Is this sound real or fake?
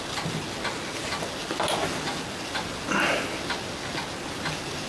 real